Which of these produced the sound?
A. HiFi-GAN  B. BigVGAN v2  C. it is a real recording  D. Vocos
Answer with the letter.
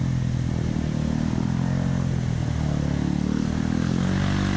C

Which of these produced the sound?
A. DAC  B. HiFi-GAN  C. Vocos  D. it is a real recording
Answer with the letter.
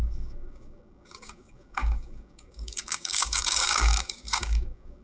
A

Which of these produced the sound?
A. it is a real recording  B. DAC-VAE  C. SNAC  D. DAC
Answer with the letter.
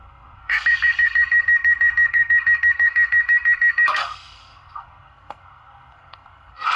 C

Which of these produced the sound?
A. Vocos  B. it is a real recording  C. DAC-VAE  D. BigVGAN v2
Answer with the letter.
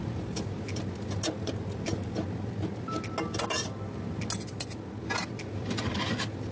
B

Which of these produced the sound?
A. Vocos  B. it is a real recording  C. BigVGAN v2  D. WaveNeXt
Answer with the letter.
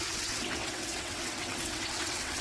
D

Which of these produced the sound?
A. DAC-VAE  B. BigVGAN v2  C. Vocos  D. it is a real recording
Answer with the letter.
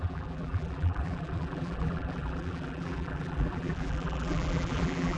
B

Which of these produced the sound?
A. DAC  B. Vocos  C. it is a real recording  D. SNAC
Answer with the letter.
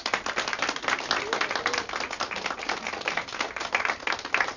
C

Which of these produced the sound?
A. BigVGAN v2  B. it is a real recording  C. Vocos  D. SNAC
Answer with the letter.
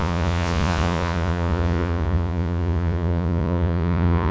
C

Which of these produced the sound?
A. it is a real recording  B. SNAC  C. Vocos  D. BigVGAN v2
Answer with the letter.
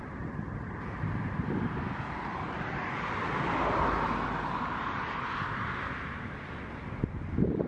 A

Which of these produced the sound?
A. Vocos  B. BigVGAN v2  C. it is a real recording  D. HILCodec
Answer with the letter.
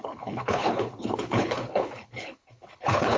D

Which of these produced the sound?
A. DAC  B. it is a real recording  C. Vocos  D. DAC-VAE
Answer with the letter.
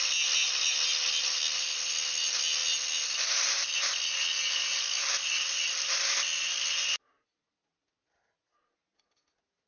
B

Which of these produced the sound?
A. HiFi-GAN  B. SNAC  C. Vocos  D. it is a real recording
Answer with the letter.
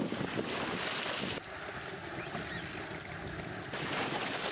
D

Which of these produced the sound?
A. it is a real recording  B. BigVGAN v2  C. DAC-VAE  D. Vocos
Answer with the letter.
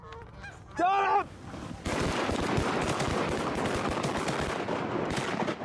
A